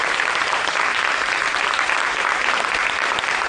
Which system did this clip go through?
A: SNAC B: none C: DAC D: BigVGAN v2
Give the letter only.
D